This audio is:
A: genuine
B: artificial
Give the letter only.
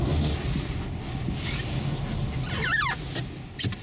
A